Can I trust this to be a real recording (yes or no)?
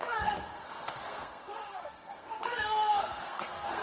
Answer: no